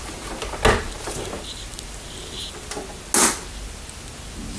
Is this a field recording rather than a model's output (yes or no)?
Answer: yes